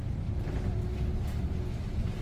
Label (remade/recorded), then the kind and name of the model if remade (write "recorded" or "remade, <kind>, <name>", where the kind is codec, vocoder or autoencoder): recorded